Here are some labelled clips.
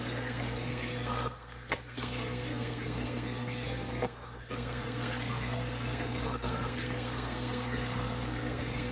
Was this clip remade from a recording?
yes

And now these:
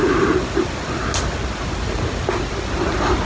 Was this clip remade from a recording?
no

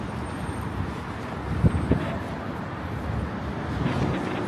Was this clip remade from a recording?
no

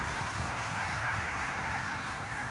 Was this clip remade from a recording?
yes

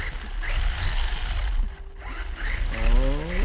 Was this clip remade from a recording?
no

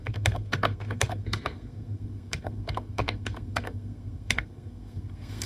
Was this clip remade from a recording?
yes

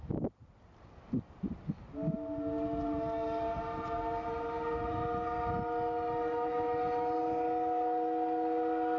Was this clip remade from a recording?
no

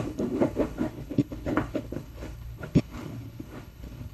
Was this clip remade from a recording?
yes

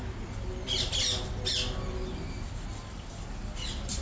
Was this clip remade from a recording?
no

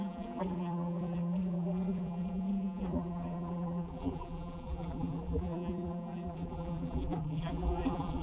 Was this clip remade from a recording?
yes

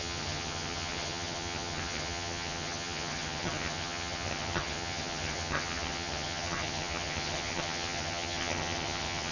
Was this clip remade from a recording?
yes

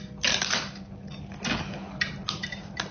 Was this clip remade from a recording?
no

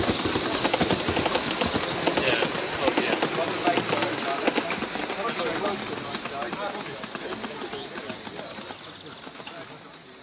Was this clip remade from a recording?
no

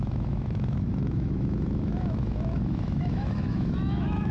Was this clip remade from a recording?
yes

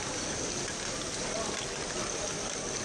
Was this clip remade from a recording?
no